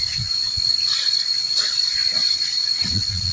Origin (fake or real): fake